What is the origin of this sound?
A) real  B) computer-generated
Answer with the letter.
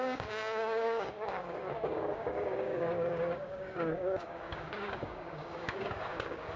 B